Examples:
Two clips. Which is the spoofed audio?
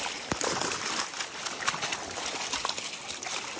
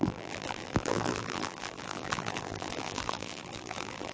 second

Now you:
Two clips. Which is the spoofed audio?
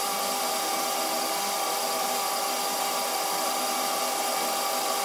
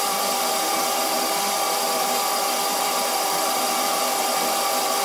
second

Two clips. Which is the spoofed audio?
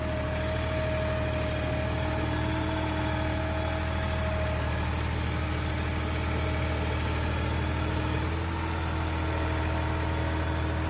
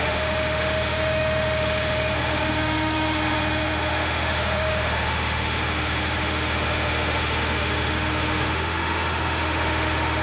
second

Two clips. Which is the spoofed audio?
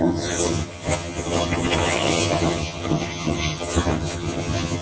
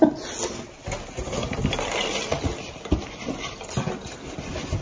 first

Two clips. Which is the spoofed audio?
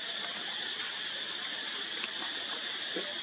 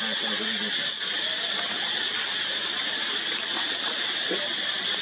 first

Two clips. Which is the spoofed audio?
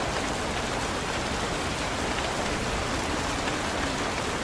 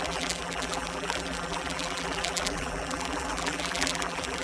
second